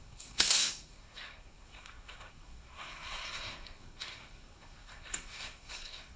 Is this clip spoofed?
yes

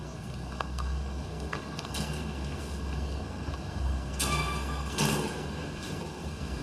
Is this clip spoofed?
yes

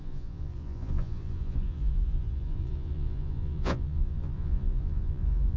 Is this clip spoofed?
yes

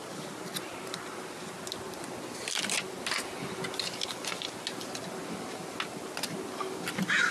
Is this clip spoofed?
no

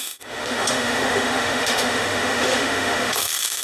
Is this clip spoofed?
yes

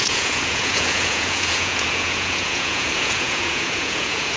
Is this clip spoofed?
yes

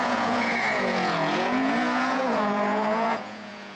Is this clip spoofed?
yes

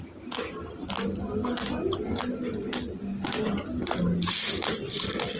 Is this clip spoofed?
no